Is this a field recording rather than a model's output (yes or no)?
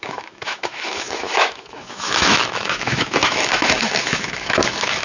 no